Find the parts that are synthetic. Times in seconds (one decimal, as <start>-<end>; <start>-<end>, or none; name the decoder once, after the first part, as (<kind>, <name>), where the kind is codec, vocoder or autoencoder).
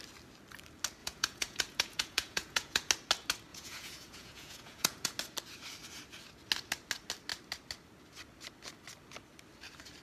1.0-2.9 (vocoder, Vocos); 3.5-5.2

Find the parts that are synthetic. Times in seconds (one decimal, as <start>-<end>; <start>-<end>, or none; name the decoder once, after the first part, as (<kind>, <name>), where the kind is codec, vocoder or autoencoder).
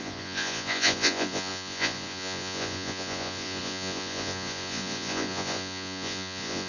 0.0-6.7 (vocoder, Vocos)